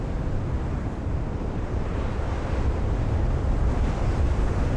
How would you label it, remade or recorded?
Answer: recorded